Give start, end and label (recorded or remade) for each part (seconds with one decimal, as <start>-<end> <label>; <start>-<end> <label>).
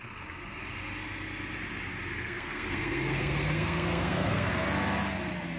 0.0-2.1 recorded; 2.1-4.5 remade; 4.5-5.6 recorded